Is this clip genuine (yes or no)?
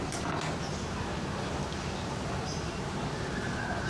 yes